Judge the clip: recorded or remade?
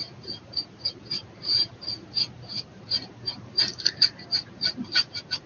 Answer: remade